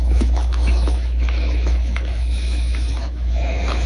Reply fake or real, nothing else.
fake